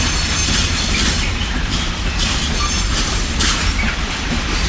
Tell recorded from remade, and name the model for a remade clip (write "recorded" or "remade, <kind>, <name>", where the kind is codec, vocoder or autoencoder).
recorded